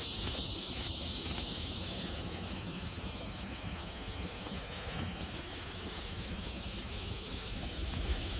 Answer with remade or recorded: remade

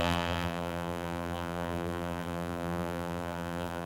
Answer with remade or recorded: remade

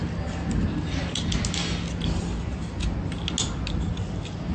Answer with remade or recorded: recorded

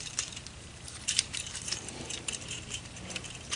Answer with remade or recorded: remade